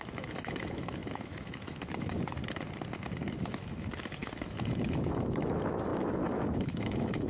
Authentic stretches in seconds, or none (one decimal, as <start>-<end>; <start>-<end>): 2.4-3.4